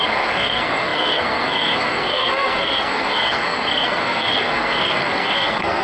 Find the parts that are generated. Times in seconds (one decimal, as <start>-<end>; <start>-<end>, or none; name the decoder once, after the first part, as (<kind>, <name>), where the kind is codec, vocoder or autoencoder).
0.0-5.8 (codec, SNAC)